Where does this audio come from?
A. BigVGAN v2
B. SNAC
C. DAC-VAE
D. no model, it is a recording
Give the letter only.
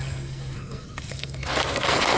B